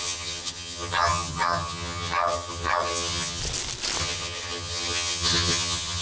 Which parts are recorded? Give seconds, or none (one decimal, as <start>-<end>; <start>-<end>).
3.4-4.0